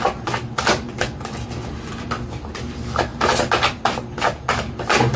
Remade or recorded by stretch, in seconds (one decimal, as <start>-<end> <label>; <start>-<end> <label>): 0.0-5.2 recorded

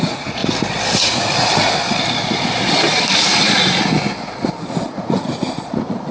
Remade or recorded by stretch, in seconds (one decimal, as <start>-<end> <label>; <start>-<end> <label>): 0.0-0.4 remade; 0.4-1.0 recorded; 1.0-1.5 remade; 1.5-4.9 recorded; 4.9-6.1 remade